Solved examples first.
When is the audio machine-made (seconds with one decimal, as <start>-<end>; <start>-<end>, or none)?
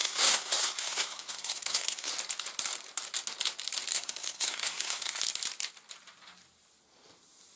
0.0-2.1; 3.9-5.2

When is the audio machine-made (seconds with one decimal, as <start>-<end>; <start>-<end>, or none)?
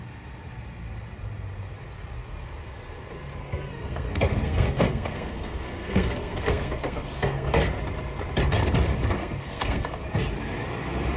3.4-7.8; 9.2-10.0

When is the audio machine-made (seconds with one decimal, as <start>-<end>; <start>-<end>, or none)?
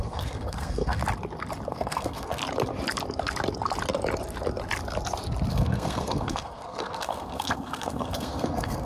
0.0-1.0; 1.7-2.4; 5.5-8.9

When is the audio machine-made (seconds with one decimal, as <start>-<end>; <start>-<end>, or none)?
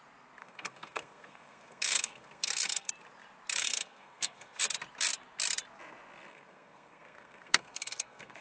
0.4-2.9; 3.6-4.6; 6.3-8.4